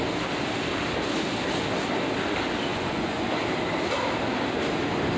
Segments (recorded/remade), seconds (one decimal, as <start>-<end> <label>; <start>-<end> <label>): 0.0-2.7 recorded; 2.7-3.4 remade; 3.4-5.2 recorded